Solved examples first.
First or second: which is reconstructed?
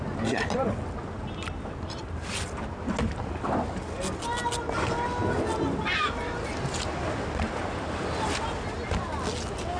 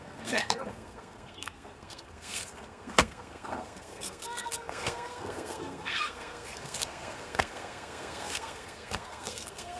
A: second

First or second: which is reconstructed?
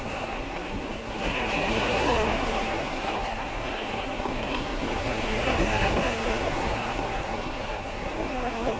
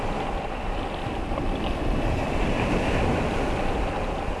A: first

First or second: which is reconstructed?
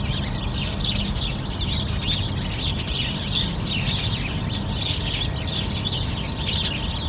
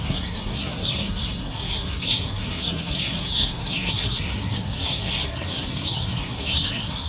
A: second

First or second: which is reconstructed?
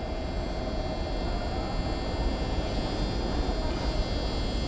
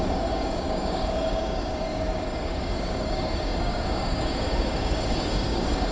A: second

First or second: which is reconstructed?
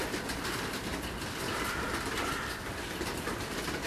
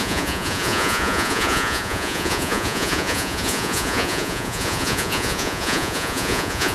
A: second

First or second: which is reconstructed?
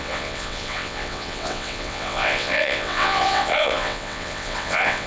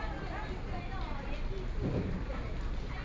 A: first